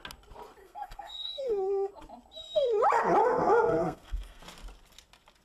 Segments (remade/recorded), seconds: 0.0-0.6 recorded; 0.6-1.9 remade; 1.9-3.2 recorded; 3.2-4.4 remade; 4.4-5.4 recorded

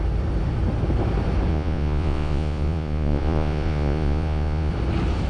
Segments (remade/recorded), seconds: 0.0-1.5 recorded; 1.5-4.7 remade; 4.7-5.3 recorded

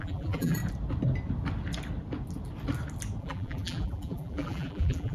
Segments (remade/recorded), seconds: 0.0-0.6 remade; 0.6-3.2 recorded; 3.2-5.1 remade

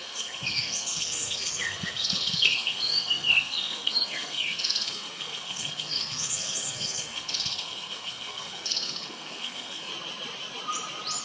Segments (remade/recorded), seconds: 0.0-9.9 remade; 9.9-11.2 recorded